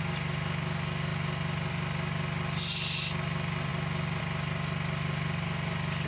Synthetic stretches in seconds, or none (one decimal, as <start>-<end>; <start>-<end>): none